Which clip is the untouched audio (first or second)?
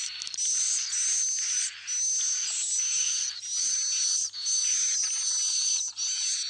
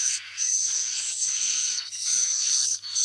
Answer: first